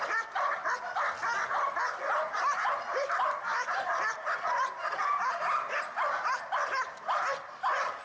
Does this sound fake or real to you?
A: real